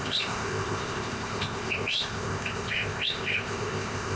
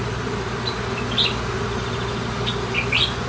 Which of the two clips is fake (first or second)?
first